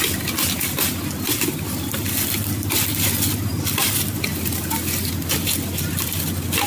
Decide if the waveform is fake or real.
real